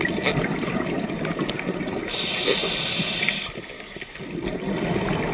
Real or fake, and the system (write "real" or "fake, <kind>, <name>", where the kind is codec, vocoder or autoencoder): real